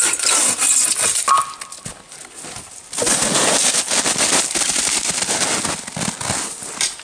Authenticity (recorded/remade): recorded